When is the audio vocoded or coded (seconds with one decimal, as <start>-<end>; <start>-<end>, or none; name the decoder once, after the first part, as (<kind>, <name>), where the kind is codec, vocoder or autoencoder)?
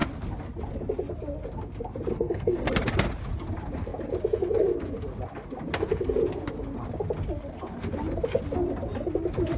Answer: 2.1-2.7 (codec, SNAC)